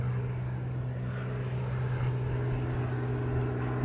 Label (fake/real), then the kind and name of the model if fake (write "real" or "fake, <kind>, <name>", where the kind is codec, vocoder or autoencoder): real